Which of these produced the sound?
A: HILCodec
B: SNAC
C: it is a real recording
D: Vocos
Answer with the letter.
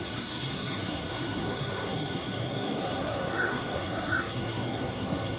B